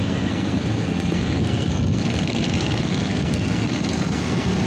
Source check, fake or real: fake